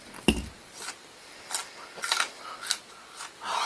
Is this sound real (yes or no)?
yes